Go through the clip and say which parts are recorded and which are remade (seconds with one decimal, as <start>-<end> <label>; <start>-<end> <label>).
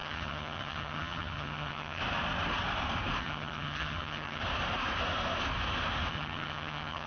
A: 0.0-2.0 remade; 2.0-3.2 recorded; 3.2-4.4 remade; 4.4-6.1 recorded; 6.1-7.1 remade